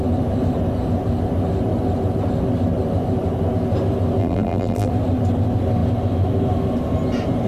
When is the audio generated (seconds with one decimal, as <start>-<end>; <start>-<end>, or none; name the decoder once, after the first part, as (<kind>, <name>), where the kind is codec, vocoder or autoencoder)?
4.2-4.9 (vocoder, BigVGAN v2)